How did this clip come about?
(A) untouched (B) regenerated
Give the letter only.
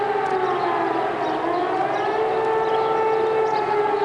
A